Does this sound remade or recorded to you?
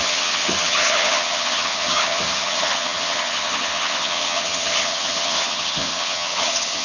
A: remade